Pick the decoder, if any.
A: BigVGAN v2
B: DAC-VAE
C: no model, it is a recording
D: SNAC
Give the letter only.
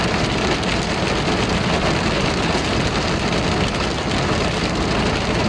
C